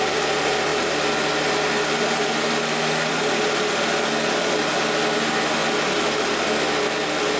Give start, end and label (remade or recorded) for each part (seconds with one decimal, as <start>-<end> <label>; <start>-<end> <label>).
0.0-7.4 recorded